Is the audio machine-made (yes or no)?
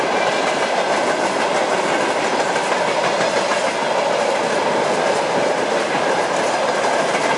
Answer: no